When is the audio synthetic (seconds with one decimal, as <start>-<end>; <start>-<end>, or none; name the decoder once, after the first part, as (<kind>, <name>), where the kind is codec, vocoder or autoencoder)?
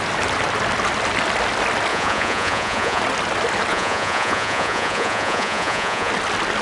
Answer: 1.9-3.0 (vocoder, Vocos); 3.7-6.1